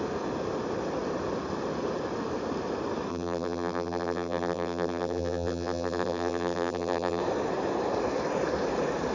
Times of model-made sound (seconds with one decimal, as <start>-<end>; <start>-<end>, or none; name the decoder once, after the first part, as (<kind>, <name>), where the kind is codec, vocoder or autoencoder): 3.1-7.2 (vocoder, BigVGAN v2)

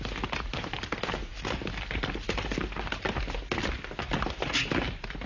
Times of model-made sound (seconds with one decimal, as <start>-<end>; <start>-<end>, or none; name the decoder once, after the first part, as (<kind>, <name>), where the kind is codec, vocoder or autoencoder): none

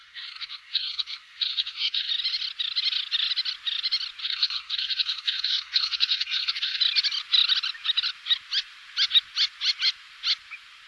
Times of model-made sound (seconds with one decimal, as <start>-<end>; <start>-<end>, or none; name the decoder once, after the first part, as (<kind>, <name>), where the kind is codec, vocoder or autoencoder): 0.0-2.1 (codec, SNAC); 4.2-6.8

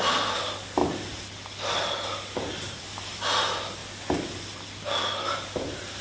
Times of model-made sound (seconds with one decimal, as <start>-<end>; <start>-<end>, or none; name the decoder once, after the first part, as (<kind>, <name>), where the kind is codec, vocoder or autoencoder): none

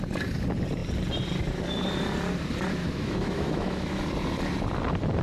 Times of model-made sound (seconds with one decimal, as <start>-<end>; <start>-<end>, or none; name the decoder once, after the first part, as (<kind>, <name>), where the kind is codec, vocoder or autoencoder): 2.8-4.0 (autoencoder, DAC-VAE)

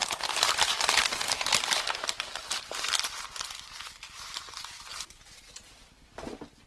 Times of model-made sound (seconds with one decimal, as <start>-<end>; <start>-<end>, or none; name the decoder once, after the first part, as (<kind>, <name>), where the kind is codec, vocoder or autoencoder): none